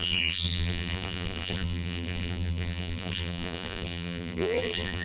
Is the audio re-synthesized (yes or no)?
yes